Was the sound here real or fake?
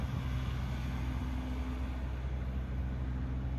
real